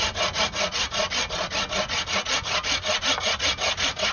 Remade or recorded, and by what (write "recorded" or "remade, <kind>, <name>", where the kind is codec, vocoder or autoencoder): recorded